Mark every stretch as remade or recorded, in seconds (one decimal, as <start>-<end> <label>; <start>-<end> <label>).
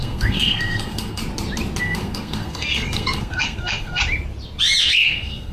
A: 0.0-1.2 remade; 1.2-1.8 recorded; 1.8-4.0 remade; 4.0-4.8 recorded; 4.8-5.5 remade